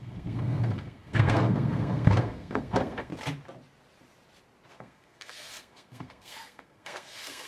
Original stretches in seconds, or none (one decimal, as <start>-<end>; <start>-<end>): 3.1-4.7